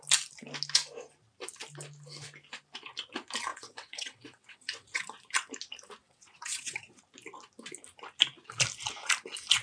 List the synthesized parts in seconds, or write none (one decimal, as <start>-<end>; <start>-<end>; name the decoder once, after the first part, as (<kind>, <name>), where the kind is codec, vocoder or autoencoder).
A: 3.5-5.0 (vocoder, WaveNeXt); 6.0-7.0